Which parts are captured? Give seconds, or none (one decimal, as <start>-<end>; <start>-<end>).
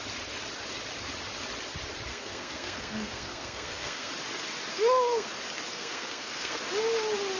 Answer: 0.0-2.1; 4.1-4.7; 5.3-5.7; 6.6-7.4